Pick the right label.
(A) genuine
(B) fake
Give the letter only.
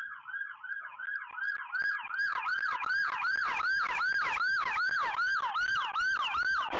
B